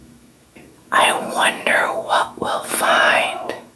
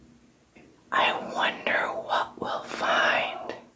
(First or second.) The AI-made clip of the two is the first